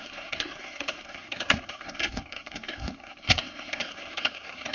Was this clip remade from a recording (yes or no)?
yes